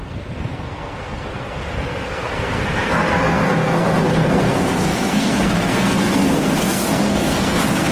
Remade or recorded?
remade